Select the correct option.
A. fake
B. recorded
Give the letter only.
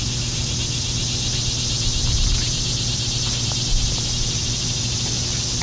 B